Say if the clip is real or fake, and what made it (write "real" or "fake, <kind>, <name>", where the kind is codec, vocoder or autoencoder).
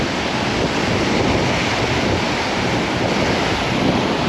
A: real